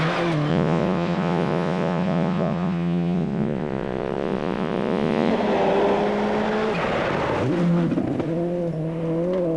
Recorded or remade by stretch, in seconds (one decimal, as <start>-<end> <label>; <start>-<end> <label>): 0.0-0.5 recorded; 0.5-5.3 remade; 5.3-9.6 recorded